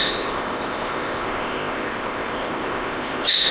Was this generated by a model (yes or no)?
yes